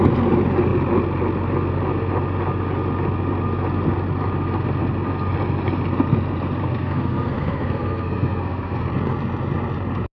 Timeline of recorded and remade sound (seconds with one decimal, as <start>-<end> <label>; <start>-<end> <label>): 0.0-6.6 recorded; 6.6-8.8 remade; 8.8-10.1 recorded